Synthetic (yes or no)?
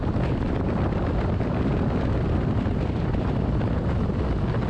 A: yes